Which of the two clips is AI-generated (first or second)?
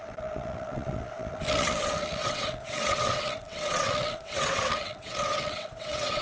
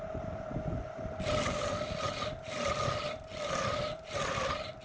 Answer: first